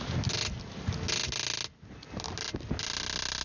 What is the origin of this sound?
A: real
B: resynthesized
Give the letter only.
A